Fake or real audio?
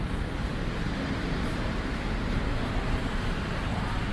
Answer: fake